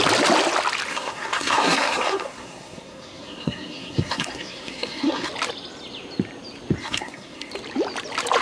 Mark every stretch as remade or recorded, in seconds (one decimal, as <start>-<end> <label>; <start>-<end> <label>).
0.0-0.9 recorded; 0.9-5.3 remade; 5.3-6.8 recorded; 6.8-7.5 remade; 7.5-8.4 recorded